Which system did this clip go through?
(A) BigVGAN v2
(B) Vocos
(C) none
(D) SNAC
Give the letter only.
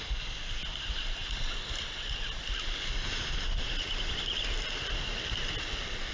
C